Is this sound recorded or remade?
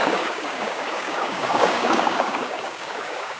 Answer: remade